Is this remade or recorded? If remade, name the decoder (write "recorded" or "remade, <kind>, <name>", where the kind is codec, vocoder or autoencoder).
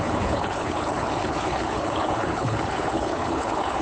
remade, codec, HILCodec